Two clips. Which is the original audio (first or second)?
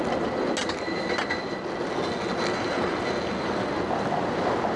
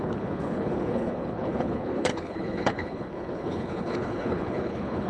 first